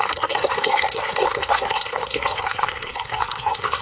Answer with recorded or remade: remade